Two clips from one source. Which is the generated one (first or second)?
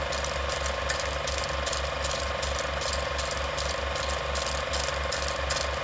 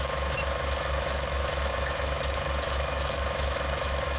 second